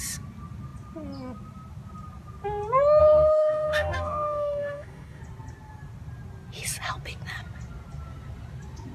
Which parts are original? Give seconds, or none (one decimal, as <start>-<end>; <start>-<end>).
0.0-3.0; 5.2-8.9